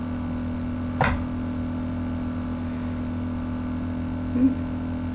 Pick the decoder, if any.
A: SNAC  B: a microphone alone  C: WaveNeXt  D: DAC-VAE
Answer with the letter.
B